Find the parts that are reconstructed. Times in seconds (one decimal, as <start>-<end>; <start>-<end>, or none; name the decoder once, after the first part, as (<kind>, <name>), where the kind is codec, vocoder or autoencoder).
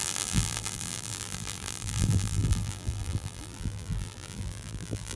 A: 0.0-5.2 (vocoder, BigVGAN v2)